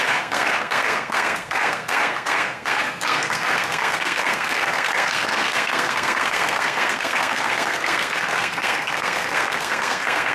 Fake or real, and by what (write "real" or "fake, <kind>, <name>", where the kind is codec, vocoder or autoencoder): fake, codec, SNAC